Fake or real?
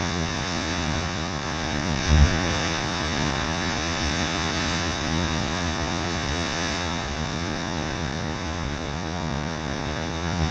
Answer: fake